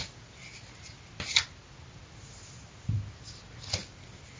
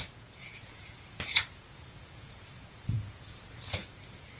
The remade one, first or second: second